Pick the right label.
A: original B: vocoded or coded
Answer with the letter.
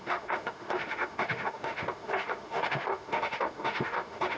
B